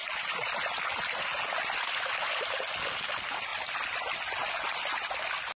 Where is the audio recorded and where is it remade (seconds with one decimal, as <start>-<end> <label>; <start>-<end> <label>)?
0.0-2.6 remade; 2.6-3.5 recorded; 3.5-4.0 remade; 4.0-4.4 recorded; 4.4-4.9 remade; 4.9-5.6 recorded